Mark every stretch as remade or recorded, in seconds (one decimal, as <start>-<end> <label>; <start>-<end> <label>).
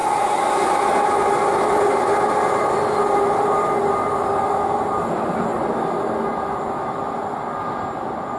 0.0-8.4 recorded